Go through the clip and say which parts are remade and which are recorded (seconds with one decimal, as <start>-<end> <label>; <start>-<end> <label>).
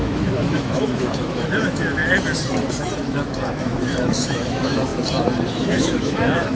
0.0-2.0 remade; 2.0-3.0 recorded; 3.0-4.9 remade; 4.9-5.5 recorded; 5.5-6.6 remade